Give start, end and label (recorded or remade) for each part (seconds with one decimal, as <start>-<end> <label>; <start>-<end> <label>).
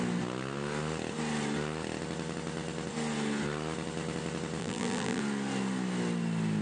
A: 0.0-4.6 recorded; 4.6-5.2 remade; 5.2-6.6 recorded